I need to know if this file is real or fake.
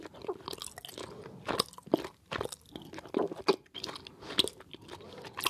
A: real